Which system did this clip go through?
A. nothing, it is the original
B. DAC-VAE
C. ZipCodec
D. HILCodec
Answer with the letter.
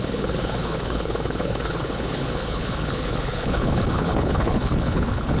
D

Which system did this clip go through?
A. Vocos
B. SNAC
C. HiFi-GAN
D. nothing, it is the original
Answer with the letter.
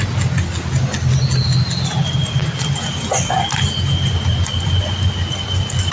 D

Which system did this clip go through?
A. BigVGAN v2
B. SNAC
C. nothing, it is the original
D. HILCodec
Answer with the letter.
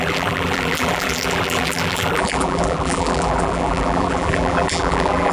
A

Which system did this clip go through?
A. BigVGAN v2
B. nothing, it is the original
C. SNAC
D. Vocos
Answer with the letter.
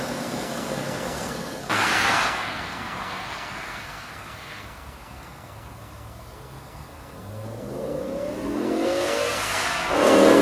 C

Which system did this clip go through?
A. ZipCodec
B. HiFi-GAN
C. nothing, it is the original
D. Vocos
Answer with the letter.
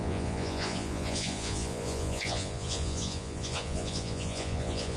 D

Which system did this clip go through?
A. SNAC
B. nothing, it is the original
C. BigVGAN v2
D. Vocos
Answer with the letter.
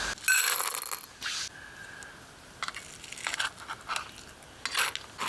B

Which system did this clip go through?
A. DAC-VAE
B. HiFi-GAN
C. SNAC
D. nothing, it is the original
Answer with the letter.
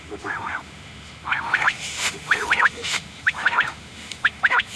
A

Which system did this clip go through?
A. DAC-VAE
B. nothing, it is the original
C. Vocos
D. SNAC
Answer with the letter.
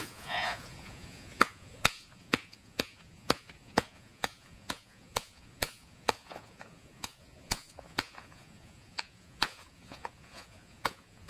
C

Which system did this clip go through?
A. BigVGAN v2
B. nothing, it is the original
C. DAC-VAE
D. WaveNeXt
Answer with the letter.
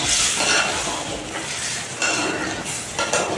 B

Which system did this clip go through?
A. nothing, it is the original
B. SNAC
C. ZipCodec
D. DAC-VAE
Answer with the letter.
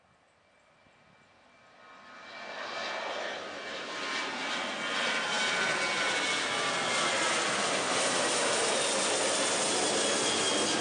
A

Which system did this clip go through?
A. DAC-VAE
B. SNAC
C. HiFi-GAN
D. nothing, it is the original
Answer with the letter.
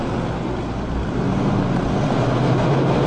D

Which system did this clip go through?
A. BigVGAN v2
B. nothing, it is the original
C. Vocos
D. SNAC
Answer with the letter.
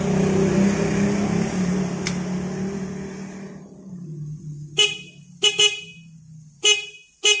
B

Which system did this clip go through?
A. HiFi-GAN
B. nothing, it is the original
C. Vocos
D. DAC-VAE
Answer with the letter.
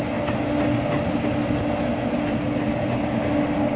B